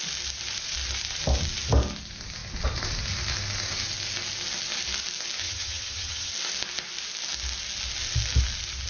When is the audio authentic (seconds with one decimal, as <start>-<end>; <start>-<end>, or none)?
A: 0.0-5.4; 6.3-8.9